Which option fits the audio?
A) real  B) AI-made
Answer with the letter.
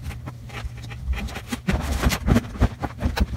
B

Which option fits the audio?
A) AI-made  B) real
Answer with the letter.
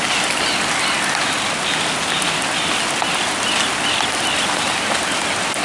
B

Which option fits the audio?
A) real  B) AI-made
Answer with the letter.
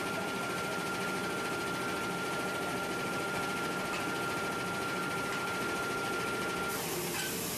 B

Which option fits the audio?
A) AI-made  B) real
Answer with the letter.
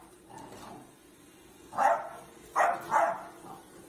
B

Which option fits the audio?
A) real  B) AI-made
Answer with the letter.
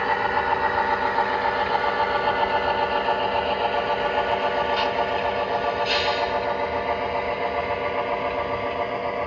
A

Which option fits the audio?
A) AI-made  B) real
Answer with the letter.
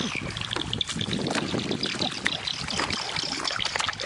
B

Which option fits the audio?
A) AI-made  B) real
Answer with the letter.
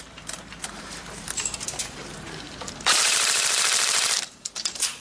A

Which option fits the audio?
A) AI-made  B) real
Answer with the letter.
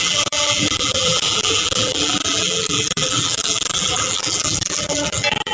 A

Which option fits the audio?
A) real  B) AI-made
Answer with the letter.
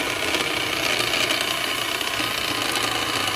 A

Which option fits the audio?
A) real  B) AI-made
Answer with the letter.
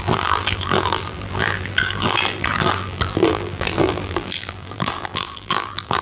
B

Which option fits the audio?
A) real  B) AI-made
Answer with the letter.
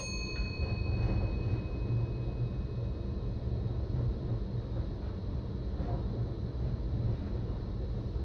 A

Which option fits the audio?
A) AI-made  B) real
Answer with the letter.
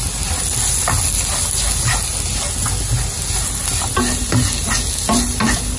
B